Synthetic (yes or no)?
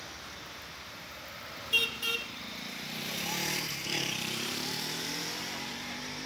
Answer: yes